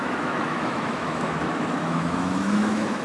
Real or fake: fake